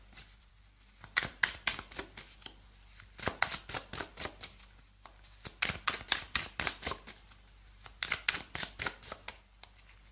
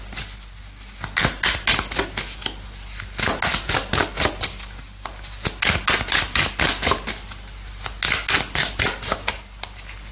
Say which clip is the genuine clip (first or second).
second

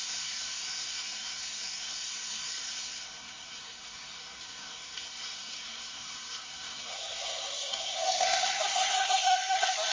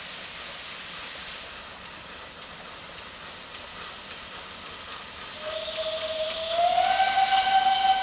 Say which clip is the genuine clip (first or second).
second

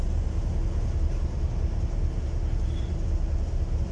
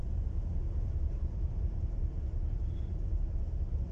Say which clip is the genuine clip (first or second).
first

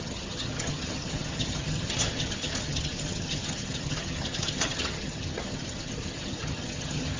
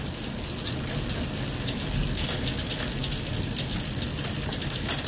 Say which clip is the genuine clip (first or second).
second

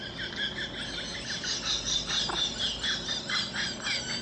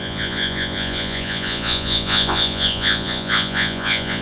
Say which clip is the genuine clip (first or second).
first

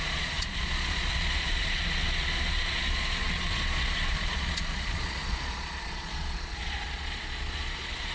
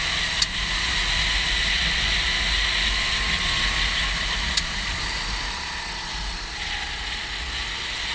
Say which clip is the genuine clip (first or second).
second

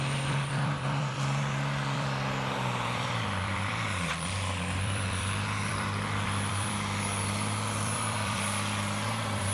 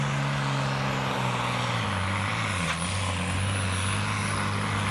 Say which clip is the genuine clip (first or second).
second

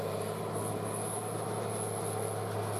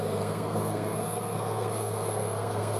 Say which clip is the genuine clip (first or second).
first